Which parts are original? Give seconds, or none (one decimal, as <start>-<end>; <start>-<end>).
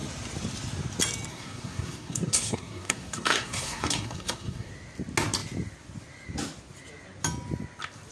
0.0-1.3; 4.7-8.1